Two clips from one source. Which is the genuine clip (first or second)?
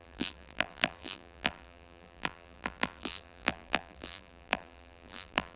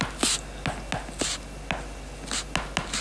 second